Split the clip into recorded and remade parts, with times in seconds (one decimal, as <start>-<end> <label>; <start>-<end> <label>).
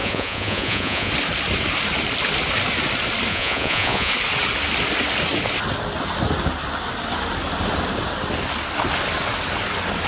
0.0-1.1 remade; 1.1-3.3 recorded; 3.3-4.1 remade; 4.1-10.1 recorded